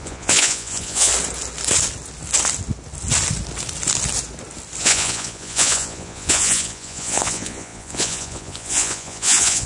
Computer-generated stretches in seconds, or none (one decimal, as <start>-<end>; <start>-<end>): 0.0-1.1; 4.8-9.7